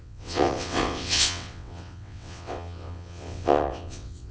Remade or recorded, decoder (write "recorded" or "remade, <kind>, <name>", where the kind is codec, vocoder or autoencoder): remade, vocoder, WaveNeXt